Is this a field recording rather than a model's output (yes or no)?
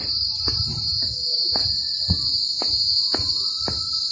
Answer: yes